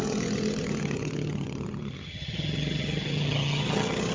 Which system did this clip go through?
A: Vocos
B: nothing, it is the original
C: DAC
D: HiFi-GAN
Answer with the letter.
D